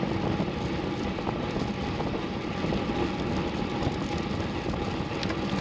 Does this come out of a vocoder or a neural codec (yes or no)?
no